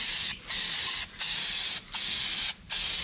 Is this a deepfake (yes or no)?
no